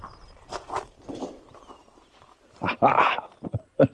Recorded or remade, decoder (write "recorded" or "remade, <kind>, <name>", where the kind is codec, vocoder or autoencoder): remade, vocoder, BigVGAN v2